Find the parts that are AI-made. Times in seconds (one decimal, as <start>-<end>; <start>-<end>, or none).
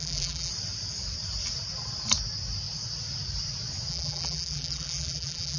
0.0-0.5; 3.9-5.6